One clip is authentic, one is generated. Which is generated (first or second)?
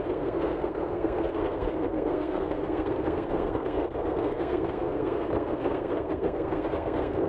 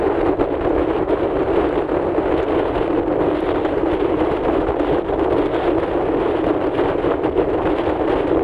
first